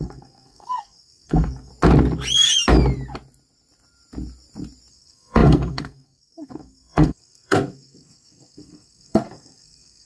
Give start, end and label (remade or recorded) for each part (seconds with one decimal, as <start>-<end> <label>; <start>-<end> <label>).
0.0-1.7 remade; 1.7-4.9 recorded; 4.9-10.1 remade